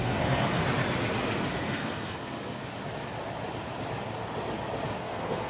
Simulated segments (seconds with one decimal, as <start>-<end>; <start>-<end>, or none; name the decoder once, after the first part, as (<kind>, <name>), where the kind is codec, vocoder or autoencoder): 0.0-0.6 (codec, SNAC); 1.5-2.6; 5.0-5.5